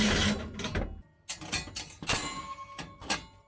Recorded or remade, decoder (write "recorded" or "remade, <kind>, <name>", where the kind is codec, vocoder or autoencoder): recorded